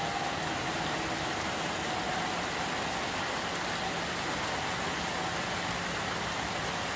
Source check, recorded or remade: recorded